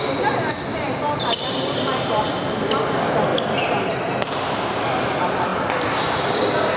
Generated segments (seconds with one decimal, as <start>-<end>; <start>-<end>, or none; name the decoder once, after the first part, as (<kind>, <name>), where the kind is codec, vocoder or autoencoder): 0.7-2.3 (vocoder, BigVGAN v2); 5.5-6.3